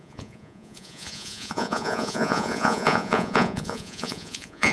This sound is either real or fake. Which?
fake